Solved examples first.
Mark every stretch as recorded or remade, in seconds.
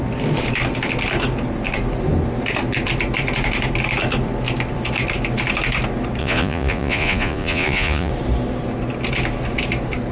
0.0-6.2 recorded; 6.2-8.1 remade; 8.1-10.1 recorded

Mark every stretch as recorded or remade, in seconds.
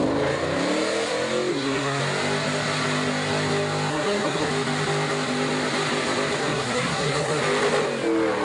0.0-1.5 recorded; 1.5-2.0 remade; 2.0-3.9 recorded; 3.9-4.5 remade; 4.5-6.4 recorded; 6.4-7.4 remade; 7.4-8.4 recorded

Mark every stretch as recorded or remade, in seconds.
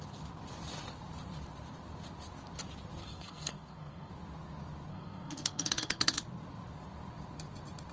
0.0-3.0 recorded; 3.0-4.1 remade; 4.1-4.9 recorded; 4.9-6.0 remade; 6.0-7.9 recorded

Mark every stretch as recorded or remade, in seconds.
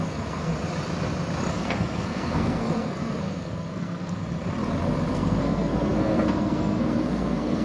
0.0-0.5 remade; 0.5-1.5 recorded; 1.5-4.2 remade; 4.2-5.1 recorded; 5.1-7.6 remade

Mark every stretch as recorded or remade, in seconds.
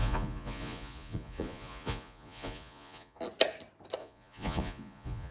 0.0-3.2 remade; 3.2-4.0 recorded; 4.0-5.3 remade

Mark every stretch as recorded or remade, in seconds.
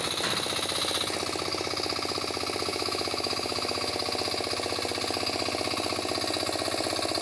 0.0-2.7 recorded; 2.7-3.9 remade; 3.9-7.2 recorded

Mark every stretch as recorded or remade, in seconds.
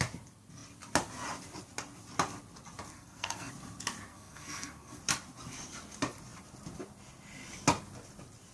0.0-2.9 recorded; 2.9-3.5 remade; 3.5-4.1 recorded; 4.1-5.0 remade; 5.0-8.5 recorded